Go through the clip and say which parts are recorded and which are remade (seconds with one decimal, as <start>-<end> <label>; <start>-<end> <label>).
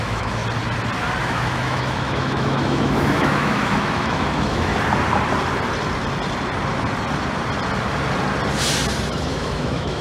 0.0-0.4 remade; 0.4-1.2 recorded; 1.2-4.7 remade; 4.7-9.1 recorded; 9.1-10.0 remade